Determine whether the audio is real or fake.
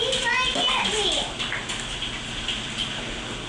real